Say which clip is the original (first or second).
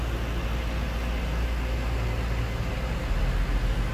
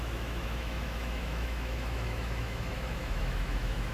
first